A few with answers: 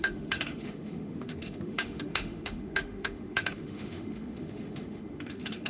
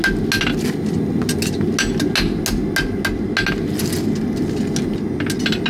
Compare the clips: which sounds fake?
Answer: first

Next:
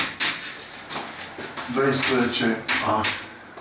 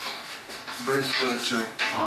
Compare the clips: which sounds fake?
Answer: second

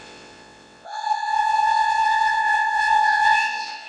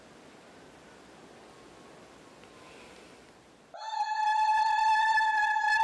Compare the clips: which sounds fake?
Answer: first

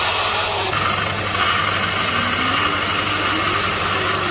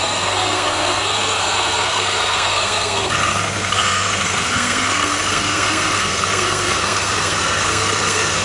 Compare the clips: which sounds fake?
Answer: second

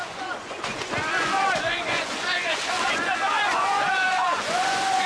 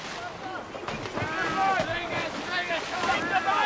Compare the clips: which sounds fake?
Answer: first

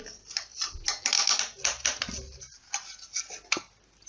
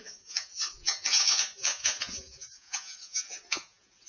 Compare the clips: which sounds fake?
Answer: second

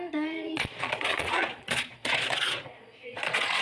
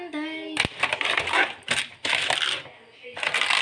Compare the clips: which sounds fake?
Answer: first